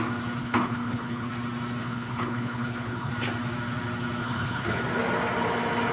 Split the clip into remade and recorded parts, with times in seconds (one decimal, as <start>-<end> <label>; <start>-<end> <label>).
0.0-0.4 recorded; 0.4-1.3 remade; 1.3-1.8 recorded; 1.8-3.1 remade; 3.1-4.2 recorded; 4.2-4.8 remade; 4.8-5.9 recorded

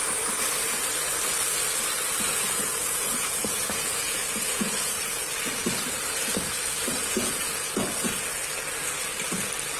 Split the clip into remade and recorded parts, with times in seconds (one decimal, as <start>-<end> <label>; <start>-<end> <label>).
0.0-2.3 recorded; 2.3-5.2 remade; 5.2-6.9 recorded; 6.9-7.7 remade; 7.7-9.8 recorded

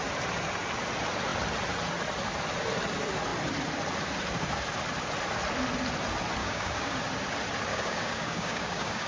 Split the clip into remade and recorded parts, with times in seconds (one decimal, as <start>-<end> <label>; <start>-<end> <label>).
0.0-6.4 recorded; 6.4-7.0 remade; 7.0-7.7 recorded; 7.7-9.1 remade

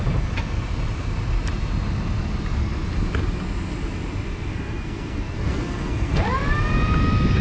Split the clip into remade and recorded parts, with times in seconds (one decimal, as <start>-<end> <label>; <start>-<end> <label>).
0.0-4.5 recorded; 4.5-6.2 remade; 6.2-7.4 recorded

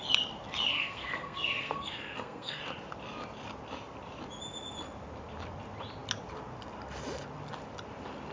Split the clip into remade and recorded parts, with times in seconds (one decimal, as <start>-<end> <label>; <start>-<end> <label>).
0.0-0.7 recorded; 0.7-2.6 remade; 2.6-8.3 recorded

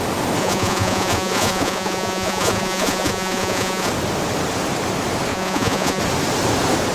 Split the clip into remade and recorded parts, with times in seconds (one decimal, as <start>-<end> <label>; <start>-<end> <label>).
0.0-0.4 recorded; 0.4-3.9 remade; 3.9-5.3 recorded; 5.3-6.0 remade; 6.0-6.9 recorded

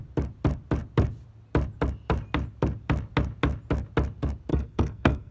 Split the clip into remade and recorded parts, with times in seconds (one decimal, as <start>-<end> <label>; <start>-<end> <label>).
0.0-4.5 recorded; 4.5-5.3 remade